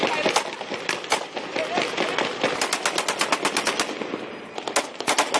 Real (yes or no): yes